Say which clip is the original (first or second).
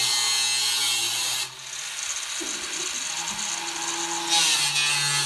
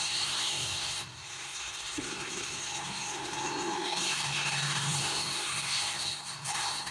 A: first